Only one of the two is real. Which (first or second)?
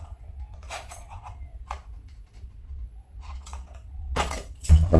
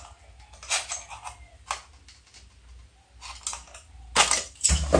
second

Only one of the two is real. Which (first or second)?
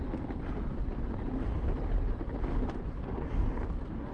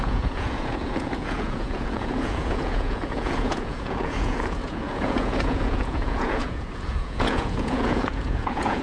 first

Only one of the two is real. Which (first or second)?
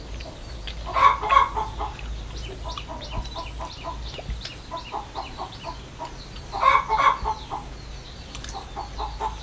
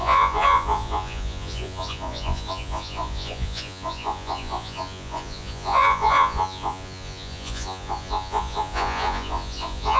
first